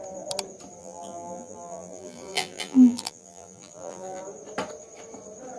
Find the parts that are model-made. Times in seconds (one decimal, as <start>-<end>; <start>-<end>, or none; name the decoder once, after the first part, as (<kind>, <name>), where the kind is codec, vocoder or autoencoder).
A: 0.8-4.2 (vocoder, BigVGAN v2)